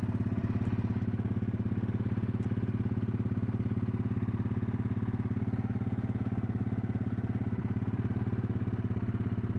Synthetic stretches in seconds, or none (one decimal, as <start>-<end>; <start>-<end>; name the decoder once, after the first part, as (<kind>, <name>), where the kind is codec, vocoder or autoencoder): 7.6-8.2 (vocoder, BigVGAN v2)

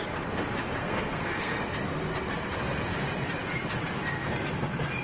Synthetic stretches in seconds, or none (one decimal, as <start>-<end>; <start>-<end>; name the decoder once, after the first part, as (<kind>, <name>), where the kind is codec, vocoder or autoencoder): 0.8-1.6 (codec, SNAC)

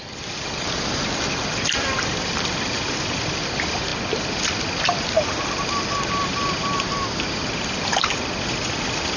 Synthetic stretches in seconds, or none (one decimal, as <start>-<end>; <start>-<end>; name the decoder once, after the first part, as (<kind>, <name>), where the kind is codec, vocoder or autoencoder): 0.0-3.9 (vocoder, BigVGAN v2); 6.1-9.2

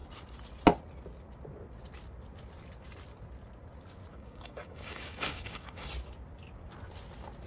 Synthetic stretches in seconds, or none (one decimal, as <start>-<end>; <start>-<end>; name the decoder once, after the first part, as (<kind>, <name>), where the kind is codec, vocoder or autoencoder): 4.1-5.9 (codec, DAC)

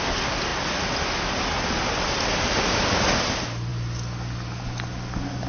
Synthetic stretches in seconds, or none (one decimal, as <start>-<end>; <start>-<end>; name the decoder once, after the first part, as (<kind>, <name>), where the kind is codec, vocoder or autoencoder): none

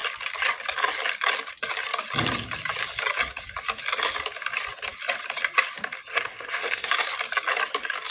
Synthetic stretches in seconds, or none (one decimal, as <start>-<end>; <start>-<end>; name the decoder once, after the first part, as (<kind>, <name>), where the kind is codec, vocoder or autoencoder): 6.1-6.9 (codec, SNAC)

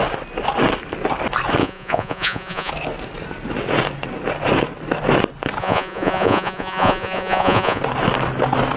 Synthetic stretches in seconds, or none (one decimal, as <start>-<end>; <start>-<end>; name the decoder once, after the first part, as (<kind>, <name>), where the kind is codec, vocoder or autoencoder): 1.6-2.7 (vocoder, Vocos); 5.6-7.8